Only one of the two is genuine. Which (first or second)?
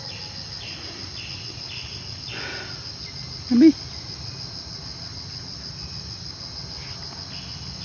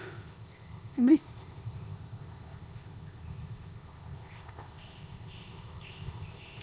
first